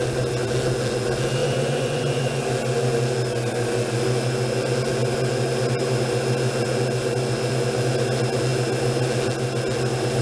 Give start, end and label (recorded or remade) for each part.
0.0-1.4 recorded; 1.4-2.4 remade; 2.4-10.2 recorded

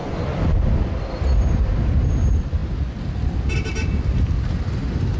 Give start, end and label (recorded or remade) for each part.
0.0-0.7 remade; 0.7-5.2 recorded

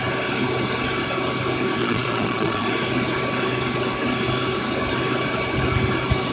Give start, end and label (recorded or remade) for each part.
0.0-1.8 recorded; 1.8-2.7 remade; 2.7-6.3 recorded

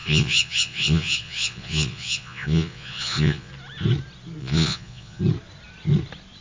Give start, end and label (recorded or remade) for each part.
0.0-3.5 remade; 3.5-4.4 recorded; 4.4-5.2 remade; 5.2-6.4 recorded